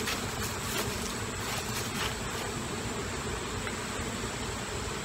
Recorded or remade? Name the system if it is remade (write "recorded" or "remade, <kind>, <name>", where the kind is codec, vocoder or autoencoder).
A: recorded